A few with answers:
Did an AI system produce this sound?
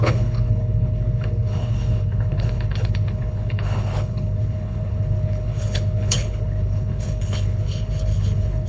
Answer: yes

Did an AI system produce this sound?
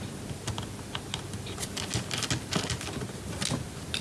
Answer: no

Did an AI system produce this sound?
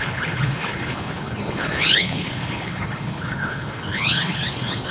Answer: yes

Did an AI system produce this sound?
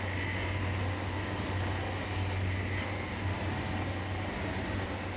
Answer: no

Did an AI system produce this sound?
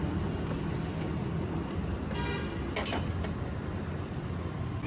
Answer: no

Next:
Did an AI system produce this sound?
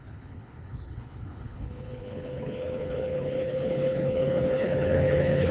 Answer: yes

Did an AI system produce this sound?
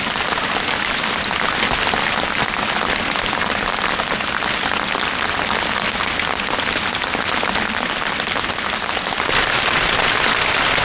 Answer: no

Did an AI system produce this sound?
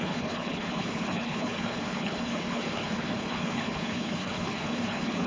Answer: yes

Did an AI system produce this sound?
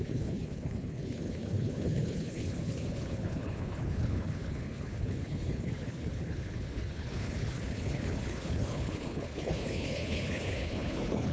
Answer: yes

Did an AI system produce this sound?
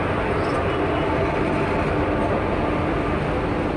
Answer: no